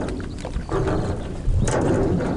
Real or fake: real